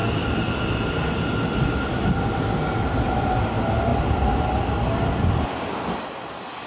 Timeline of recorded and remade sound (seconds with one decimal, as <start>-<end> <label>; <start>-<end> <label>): 0.0-6.7 recorded